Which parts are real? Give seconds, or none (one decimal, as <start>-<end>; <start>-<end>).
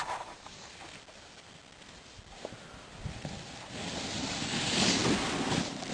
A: 0.7-4.2; 5.0-5.9